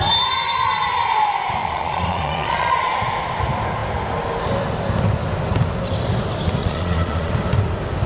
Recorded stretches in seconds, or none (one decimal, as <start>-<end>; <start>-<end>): 0.0-1.6; 2.9-6.6; 7.3-8.1